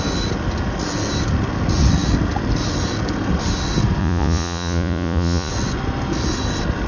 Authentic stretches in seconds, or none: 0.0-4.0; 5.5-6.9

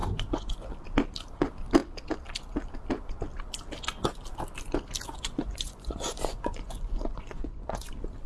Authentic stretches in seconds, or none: 0.7-5.1; 7.9-8.3

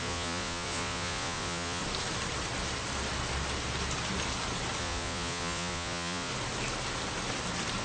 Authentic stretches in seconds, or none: 1.8-4.8; 6.3-7.8

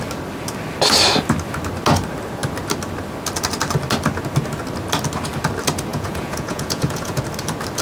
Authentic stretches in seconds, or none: 0.0-5.9; 7.2-7.8

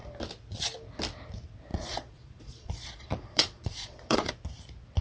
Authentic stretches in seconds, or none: 0.0-1.7; 4.3-5.0

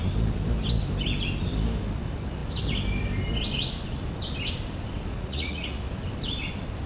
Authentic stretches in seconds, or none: 0.0-5.1; 5.8-6.9

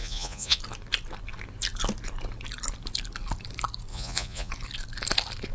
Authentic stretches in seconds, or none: 0.6-3.9; 4.5-5.5

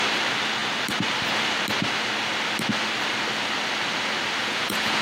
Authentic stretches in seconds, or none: 0.0-4.4